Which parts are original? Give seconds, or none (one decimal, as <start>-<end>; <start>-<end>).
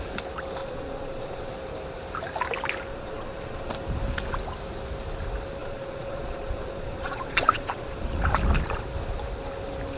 0.0-0.6; 1.5-2.9; 3.7-5.6; 8.2-10.0